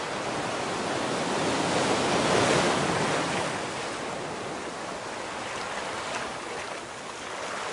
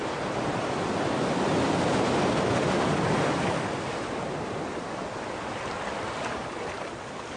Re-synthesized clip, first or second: second